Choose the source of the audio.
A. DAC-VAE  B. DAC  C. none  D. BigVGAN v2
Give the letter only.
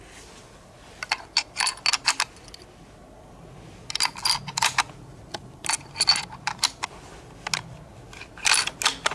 C